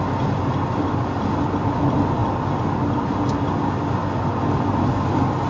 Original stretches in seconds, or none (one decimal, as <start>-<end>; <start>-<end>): 0.0-5.5

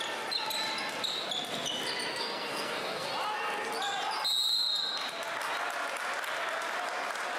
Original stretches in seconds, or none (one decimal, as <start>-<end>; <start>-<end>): 0.0-2.1; 3.1-7.4

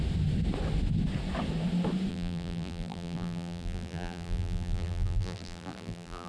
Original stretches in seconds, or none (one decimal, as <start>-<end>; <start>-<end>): 0.0-2.1